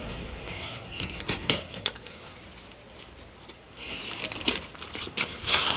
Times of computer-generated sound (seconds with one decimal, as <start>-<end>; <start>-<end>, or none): 0.0-2.4; 3.5-4.0; 5.1-5.8